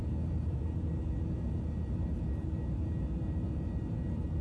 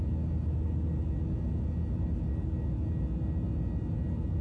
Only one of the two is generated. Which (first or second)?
first